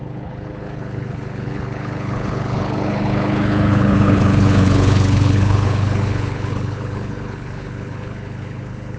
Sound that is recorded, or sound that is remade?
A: remade